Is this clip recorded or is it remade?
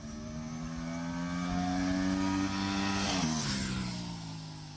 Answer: recorded